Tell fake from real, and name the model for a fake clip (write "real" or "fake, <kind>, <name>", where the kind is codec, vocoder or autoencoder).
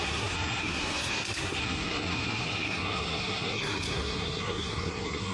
fake, codec, SNAC